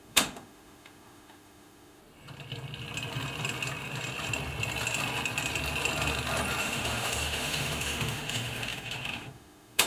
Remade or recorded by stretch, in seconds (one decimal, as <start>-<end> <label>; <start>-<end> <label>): 0.0-2.0 remade; 2.0-6.6 recorded; 6.6-9.9 remade